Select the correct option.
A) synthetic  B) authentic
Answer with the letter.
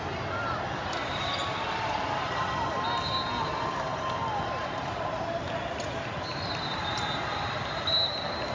B